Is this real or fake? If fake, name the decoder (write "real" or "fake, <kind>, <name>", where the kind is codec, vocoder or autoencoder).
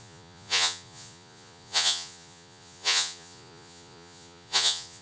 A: fake, vocoder, Vocos